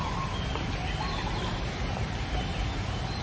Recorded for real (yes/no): yes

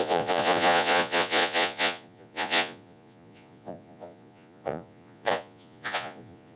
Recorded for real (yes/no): no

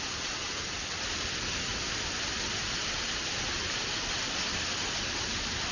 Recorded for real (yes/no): yes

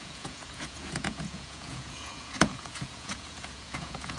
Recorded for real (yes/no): no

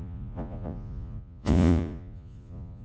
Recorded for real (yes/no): no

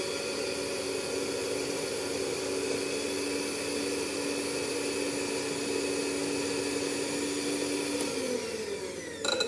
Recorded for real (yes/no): yes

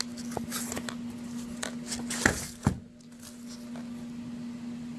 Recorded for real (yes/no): yes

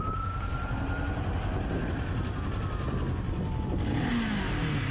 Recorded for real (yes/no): yes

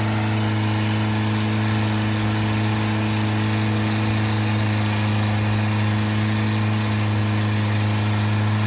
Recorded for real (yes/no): yes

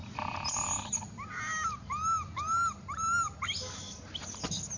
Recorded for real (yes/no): yes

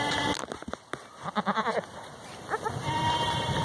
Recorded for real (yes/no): yes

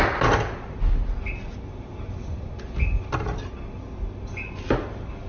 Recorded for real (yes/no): yes